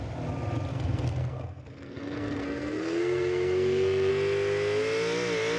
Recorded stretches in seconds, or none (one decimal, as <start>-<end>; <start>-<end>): 0.0-0.7; 4.1-5.6